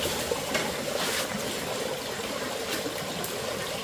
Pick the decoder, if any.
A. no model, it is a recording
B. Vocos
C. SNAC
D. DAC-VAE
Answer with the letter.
A